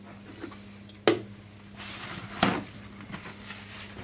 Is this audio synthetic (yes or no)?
no